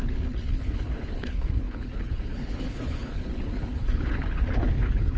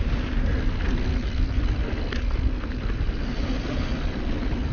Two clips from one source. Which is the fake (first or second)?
first